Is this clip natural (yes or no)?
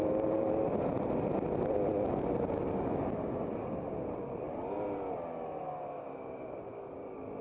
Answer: yes